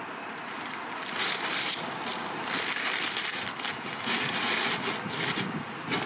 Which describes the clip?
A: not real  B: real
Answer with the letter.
B